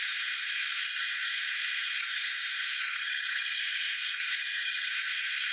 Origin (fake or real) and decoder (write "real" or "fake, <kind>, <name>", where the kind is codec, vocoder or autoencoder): fake, codec, SNAC